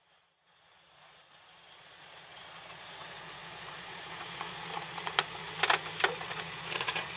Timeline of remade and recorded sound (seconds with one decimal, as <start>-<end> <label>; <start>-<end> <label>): 0.0-5.4 remade; 5.4-6.1 recorded; 6.1-7.2 remade